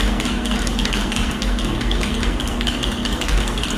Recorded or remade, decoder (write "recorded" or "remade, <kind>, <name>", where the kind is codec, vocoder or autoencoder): remade, codec, SNAC